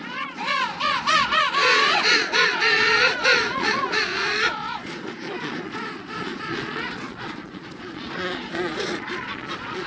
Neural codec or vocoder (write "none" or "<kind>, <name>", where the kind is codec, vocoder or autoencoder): vocoder, Vocos